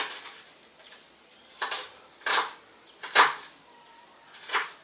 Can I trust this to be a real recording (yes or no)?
no